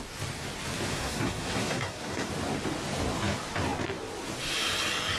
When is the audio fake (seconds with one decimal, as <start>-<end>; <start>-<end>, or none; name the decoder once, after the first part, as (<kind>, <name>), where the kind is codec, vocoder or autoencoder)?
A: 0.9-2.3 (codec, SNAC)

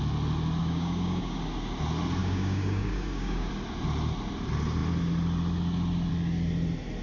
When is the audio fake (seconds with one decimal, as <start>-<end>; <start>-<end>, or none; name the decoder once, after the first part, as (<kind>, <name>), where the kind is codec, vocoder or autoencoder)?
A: 0.6-1.4 (codec, DAC); 2.2-3.5

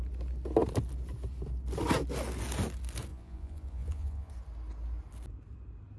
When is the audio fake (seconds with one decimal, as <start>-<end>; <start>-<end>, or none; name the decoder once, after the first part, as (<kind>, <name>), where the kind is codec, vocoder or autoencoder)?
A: 3.1-4.3 (vocoder, Vocos)

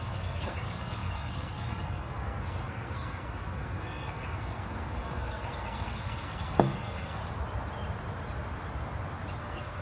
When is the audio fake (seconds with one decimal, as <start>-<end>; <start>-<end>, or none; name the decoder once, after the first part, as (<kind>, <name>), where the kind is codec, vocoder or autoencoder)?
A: 0.0-7.2 (codec, SNAC); 9.4-9.8

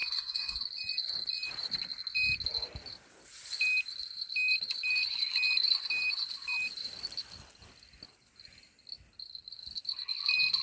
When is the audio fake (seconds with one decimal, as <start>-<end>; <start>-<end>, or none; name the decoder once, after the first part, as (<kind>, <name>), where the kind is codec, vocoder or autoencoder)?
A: 0.0-0.6 (codec, SNAC)

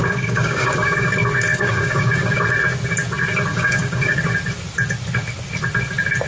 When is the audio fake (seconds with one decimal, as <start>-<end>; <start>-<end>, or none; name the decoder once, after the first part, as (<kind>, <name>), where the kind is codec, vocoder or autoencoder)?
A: 0.0-1.1 (codec, DAC); 1.5-2.4; 3.5-4.2